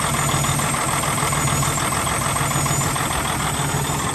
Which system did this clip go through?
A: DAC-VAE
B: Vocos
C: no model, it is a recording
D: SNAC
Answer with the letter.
C